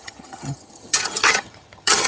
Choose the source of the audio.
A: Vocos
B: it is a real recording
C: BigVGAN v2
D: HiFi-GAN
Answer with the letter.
D